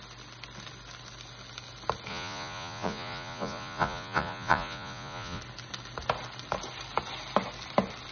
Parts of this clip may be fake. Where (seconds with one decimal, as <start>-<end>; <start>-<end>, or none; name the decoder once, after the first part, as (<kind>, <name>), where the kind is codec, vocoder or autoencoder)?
2.1-5.4 (vocoder, Vocos)